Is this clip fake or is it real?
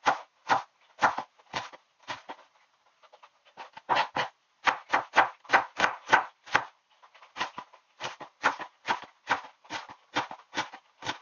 real